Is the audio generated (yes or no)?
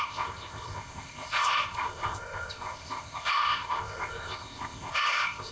yes